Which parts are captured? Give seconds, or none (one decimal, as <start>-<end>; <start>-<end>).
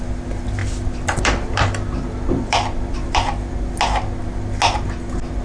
0.0-0.6; 3.6-5.4